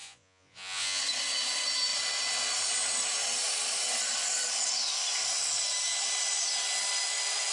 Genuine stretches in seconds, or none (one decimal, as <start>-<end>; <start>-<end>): 1.0-7.5